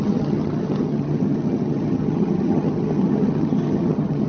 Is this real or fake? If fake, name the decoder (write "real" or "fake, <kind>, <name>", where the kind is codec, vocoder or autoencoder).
fake, vocoder, HiFi-GAN